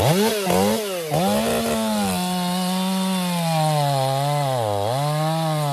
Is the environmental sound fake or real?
real